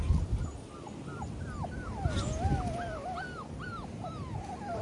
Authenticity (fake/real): real